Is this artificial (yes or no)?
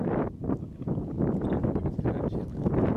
no